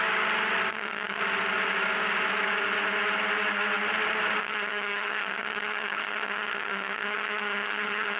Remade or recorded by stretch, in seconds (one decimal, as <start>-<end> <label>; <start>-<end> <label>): 0.0-0.7 recorded; 0.7-1.2 remade; 1.2-4.4 recorded; 4.4-8.2 remade